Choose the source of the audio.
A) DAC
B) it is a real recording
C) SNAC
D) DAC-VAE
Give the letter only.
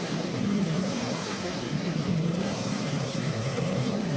C